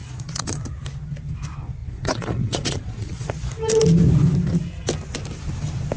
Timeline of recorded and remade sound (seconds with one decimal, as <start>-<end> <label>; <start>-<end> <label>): 0.0-0.6 remade; 0.6-1.8 recorded; 1.8-3.5 remade; 3.5-6.0 recorded